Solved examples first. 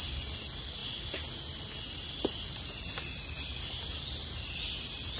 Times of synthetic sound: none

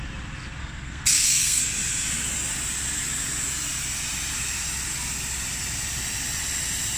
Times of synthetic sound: 0.6-1.6 (codec, SNAC)

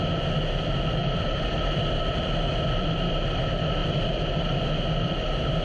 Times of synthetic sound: 1.0-3.1 (vocoder, BigVGAN v2); 3.8-5.6

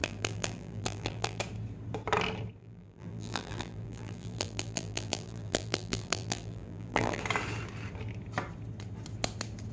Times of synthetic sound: 0.0-1.4 (vocoder, BigVGAN v2); 2.6-7.2